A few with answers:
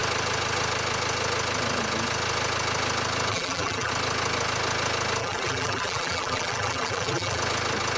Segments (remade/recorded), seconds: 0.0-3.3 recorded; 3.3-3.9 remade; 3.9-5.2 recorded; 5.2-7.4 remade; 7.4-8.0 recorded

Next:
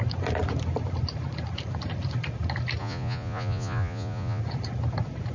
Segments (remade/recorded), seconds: 0.0-2.8 recorded; 2.8-4.4 remade; 4.4-5.3 recorded

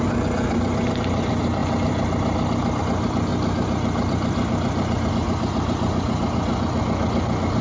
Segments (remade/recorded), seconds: 0.0-1.6 recorded; 1.6-2.8 remade; 2.8-3.3 recorded; 3.3-5.1 remade; 5.1-7.6 recorded

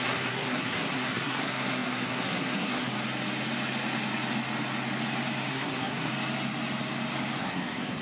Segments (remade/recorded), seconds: 0.0-2.9 remade; 2.9-5.5 recorded; 5.5-6.1 remade; 6.1-7.4 recorded; 7.4-8.0 remade

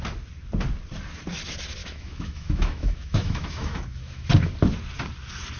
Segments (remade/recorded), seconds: 0.0-1.8 recorded; 1.8-4.3 remade; 4.3-5.6 recorded

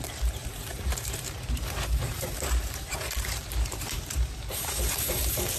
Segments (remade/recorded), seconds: 0.0-5.6 remade

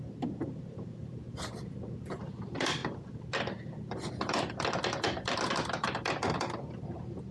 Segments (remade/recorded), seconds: 0.0-7.3 remade